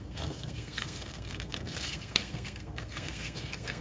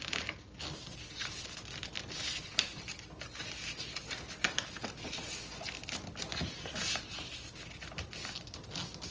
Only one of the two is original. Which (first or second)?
second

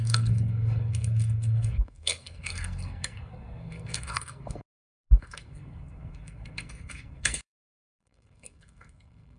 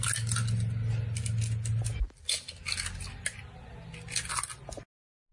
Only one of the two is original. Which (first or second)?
second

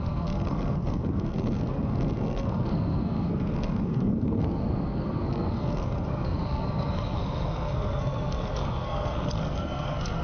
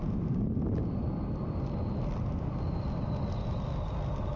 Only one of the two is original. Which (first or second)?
second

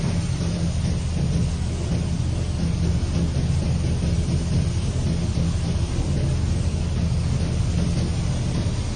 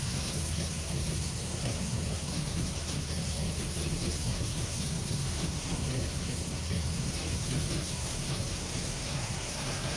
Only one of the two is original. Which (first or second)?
first